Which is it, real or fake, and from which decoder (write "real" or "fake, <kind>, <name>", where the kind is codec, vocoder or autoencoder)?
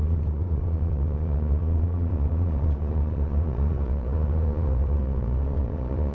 fake, vocoder, Vocos